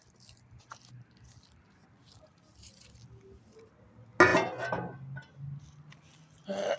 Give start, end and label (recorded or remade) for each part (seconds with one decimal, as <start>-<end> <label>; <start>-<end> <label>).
0.0-6.8 recorded